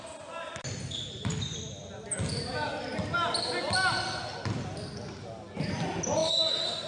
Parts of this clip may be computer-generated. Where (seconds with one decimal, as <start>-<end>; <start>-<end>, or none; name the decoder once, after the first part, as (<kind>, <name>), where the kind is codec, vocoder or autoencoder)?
none